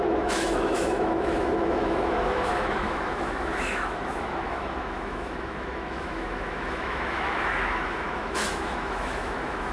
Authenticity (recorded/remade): remade